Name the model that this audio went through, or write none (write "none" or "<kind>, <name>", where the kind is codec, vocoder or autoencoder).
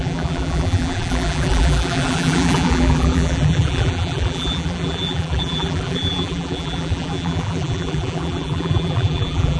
vocoder, BigVGAN v2